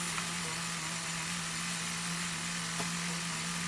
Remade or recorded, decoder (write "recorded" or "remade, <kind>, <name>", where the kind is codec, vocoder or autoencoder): recorded